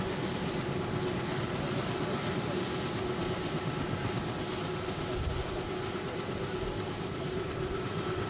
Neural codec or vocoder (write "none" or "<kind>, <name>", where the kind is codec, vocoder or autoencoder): none